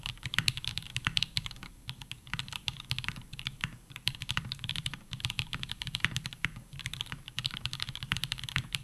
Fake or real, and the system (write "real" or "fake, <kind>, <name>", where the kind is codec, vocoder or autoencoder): fake, codec, DAC